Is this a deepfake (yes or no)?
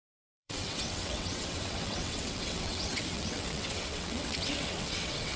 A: yes